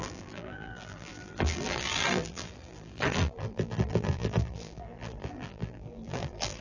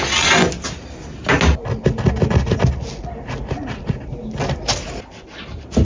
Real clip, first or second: second